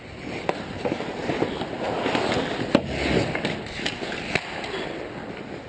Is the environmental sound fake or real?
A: real